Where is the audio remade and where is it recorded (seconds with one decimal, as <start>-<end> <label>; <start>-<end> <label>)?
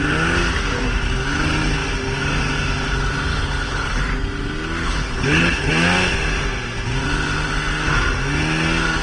0.0-3.3 recorded; 3.3-4.0 remade; 4.0-4.8 recorded; 4.8-5.7 remade; 5.7-9.0 recorded